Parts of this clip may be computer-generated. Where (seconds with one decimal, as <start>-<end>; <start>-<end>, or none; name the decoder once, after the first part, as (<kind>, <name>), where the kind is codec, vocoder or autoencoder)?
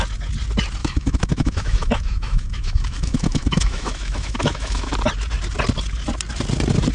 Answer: 0.8-4.9 (autoencoder, DAC-VAE)